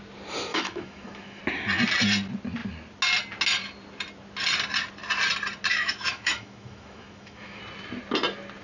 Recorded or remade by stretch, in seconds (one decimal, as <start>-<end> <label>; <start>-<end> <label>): 0.0-0.5 recorded; 0.5-1.4 remade; 1.4-5.7 recorded; 5.7-7.6 remade; 7.6-8.6 recorded